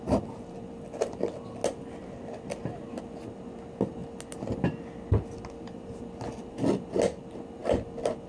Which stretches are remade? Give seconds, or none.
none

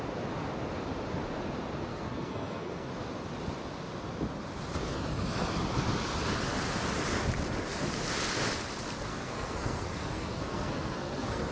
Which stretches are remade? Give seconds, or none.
1.9-2.9 (codec, SNAC); 9.1-11.5

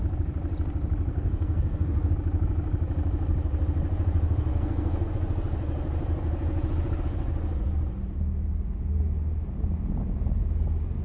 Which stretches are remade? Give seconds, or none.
1.1-2.1 (codec, SNAC); 4.5-5.1

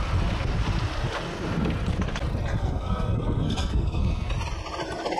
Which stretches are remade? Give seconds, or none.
2.5-4.3 (codec, SNAC)

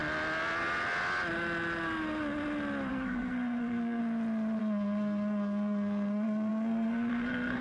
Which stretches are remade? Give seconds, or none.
2.9-4.0 (codec, SNAC); 4.6-7.6

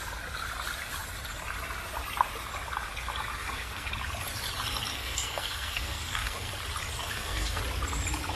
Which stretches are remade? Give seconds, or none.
3.4-3.9 (codec, SNAC); 4.9-6.5; 7.0-7.6

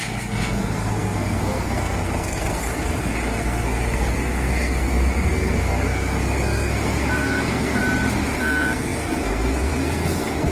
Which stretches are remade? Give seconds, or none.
0.0-7.8 (codec, SNAC); 8.4-10.5

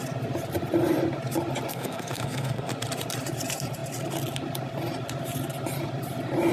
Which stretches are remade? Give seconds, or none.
1.7-2.7 (codec, SNAC)